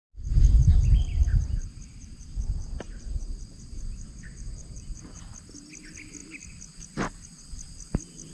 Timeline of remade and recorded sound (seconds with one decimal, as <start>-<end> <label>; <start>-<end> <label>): 0.0-1.9 recorded; 1.9-5.2 remade; 5.2-8.3 recorded